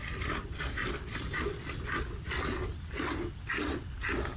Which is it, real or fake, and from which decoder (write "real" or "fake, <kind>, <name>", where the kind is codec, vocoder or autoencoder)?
real